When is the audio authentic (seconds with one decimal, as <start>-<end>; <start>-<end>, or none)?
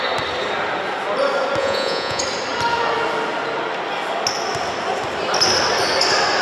0.0-1.6; 2.2-6.4